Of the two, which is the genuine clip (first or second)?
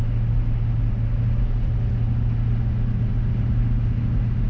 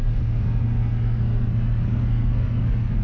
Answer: first